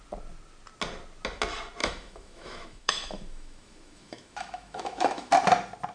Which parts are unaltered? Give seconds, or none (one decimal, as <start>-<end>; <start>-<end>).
0.0-1.8; 5.3-5.9